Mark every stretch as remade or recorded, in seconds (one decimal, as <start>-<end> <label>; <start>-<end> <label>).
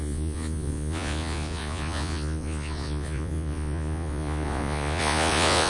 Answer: 0.0-5.7 remade